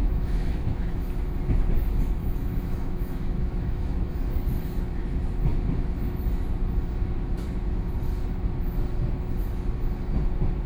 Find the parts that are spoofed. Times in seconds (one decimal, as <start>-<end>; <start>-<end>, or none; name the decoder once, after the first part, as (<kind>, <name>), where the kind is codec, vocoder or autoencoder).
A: 0.0-1.0 (autoencoder, DAC-VAE); 2.2-4.1